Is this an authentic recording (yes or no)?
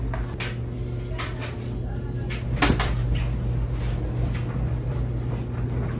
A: yes